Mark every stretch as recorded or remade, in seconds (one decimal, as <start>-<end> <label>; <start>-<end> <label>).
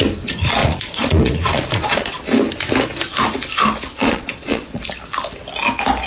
0.0-0.6 recorded; 0.6-2.2 remade; 2.2-3.9 recorded; 3.9-4.8 remade; 4.8-6.1 recorded